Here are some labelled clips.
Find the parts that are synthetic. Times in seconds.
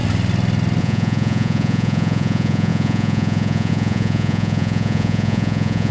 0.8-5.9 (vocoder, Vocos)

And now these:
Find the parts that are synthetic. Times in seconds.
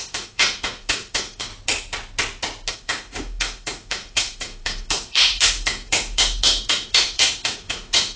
0.0-1.5 (autoencoder, DAC-VAE); 2.7-8.2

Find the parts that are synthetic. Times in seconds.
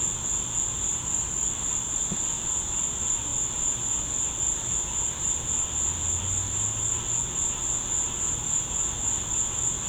none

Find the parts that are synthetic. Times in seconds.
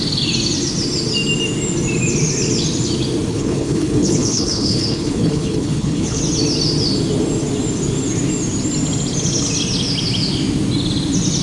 3.3-6.2 (codec, HILCodec)